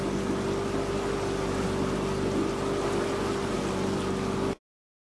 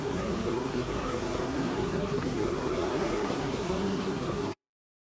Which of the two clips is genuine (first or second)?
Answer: first